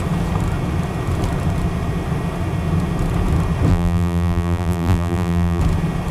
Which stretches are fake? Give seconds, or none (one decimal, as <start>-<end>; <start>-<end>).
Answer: 3.7-5.6